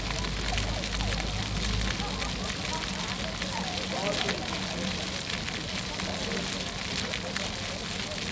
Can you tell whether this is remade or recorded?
recorded